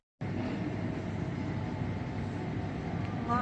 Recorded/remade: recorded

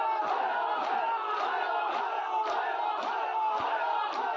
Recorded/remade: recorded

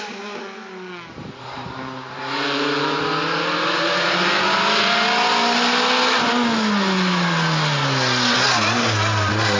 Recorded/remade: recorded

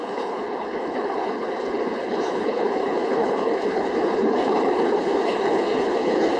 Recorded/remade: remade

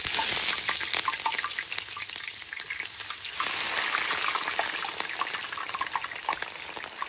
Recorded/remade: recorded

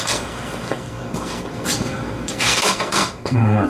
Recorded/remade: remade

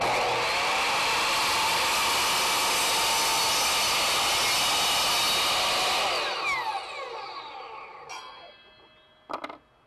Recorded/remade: recorded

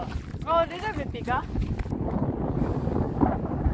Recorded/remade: recorded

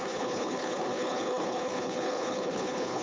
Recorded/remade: remade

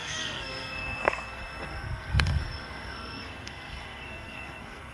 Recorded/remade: remade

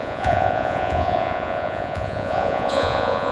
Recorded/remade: remade